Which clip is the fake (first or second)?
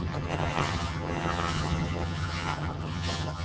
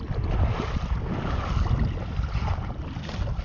first